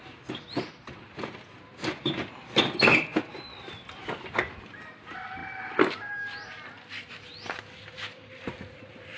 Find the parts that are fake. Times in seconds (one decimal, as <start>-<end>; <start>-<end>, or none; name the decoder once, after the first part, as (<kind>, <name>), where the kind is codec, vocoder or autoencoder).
none